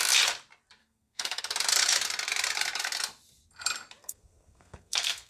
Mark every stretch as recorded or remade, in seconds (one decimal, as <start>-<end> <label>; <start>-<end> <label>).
0.0-0.8 recorded; 0.8-1.4 remade; 1.4-4.0 recorded; 4.0-5.3 remade